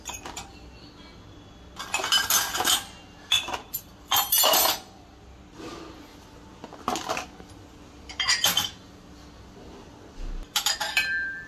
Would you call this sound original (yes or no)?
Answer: yes